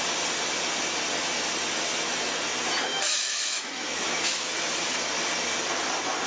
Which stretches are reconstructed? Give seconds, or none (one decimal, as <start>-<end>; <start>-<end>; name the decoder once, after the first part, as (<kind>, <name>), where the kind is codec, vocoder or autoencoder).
2.9-4.7 (autoencoder, DAC-VAE)